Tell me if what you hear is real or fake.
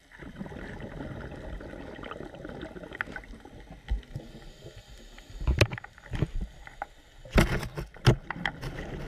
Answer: real